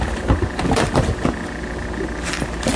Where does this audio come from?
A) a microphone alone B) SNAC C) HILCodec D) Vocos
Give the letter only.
A